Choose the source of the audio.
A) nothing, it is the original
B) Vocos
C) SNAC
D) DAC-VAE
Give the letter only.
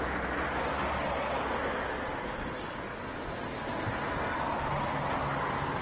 A